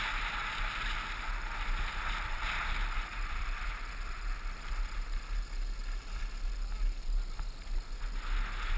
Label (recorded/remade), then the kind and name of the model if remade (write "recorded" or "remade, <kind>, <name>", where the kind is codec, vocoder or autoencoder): recorded